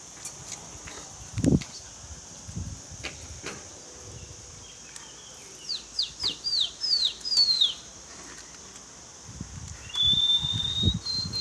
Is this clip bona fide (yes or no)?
yes